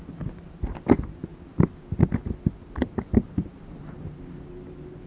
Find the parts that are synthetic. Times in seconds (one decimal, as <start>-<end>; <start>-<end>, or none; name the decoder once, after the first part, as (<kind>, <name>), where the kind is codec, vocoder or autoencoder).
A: none